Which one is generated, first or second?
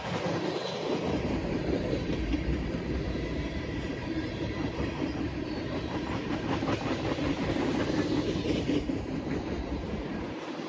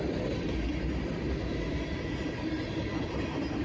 first